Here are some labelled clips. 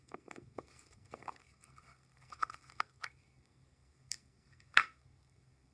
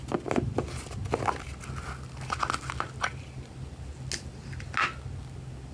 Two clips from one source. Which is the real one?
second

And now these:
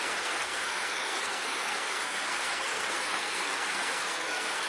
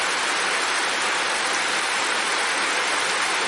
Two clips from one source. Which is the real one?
second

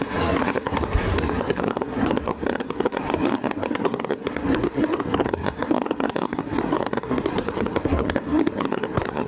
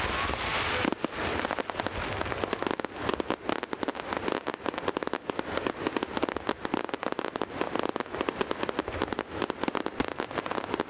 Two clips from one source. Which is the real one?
second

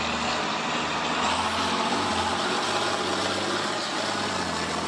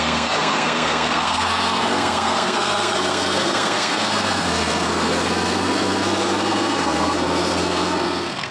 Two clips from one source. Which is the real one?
first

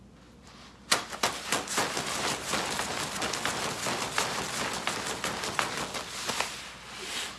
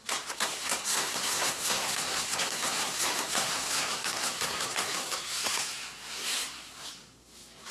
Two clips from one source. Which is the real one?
first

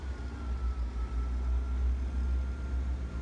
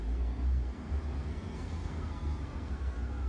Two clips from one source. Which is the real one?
first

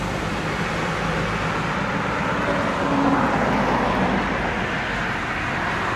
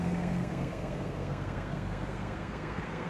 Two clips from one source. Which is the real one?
first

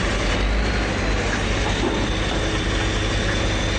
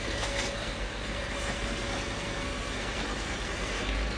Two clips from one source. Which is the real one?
first